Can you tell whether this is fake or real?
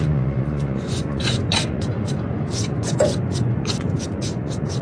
fake